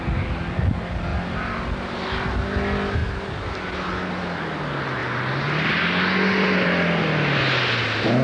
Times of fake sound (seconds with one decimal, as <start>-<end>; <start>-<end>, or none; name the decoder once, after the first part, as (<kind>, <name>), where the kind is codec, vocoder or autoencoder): none

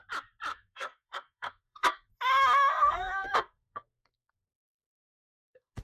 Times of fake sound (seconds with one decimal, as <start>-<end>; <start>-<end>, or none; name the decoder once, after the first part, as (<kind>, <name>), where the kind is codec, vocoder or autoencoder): 0.5-2.1 (codec, SNAC); 2.7-5.8

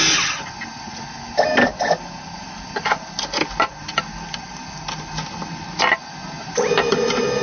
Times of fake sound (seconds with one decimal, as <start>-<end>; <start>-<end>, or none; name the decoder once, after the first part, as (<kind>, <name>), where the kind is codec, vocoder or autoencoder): none

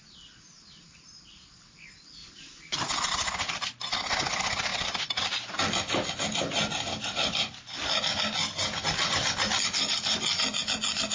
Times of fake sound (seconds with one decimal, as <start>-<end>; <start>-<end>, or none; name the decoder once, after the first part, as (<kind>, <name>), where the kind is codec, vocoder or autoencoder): none

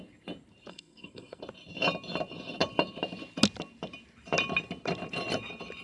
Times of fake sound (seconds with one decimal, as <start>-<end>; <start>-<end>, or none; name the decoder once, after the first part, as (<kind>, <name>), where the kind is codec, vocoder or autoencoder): 0.7-1.4 (codec, SNAC)

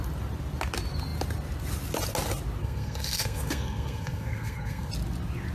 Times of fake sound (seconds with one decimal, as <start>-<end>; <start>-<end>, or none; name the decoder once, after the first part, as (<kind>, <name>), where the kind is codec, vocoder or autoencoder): 2.6-4.9 (codec, SNAC)